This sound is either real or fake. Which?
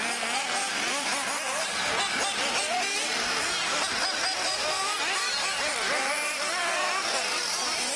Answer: real